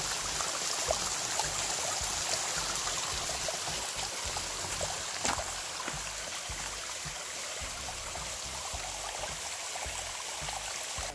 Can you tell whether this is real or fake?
real